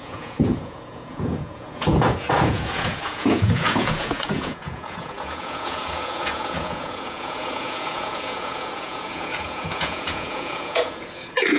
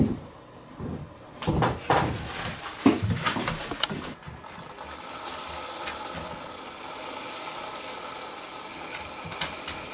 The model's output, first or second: first